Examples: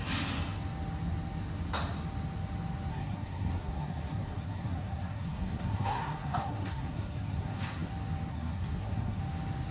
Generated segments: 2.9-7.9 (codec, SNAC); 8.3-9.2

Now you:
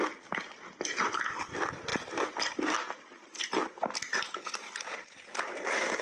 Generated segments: none

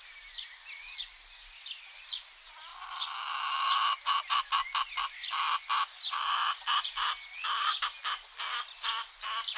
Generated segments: none